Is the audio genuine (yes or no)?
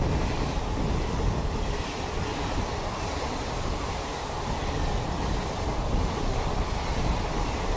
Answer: yes